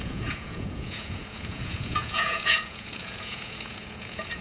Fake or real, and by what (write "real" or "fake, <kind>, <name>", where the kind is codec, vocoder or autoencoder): fake, vocoder, Vocos